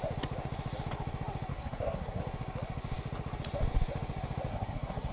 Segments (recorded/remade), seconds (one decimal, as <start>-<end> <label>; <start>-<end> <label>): 0.0-1.5 recorded; 1.5-2.2 remade; 2.2-4.5 recorded; 4.5-5.1 remade